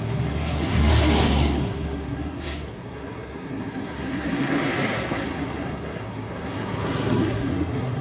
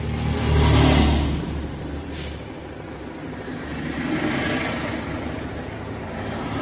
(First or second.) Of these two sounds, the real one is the second